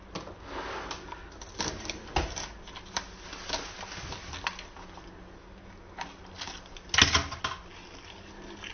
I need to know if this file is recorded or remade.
recorded